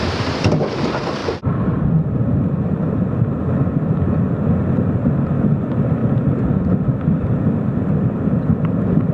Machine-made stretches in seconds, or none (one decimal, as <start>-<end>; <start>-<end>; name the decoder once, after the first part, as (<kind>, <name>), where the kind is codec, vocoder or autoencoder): 1.2-4.2 (vocoder, BigVGAN v2)